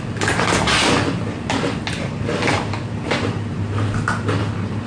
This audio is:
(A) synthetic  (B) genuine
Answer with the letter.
B